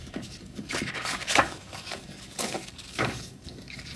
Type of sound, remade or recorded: remade